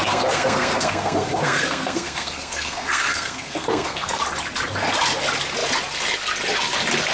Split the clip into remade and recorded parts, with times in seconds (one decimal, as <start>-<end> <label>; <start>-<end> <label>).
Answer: 0.0-4.2 remade; 4.2-7.1 recorded